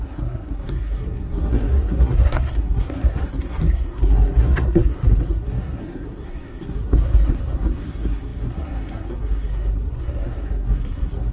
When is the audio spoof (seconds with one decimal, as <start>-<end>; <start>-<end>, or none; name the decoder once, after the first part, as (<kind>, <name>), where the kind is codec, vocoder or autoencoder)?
0.0-11.3 (codec, SNAC)